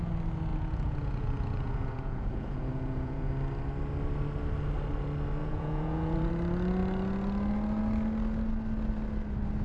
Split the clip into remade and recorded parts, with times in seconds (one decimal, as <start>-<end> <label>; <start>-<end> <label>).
0.0-0.5 recorded; 0.5-3.3 remade; 3.3-5.4 recorded; 5.4-6.3 remade; 6.3-9.6 recorded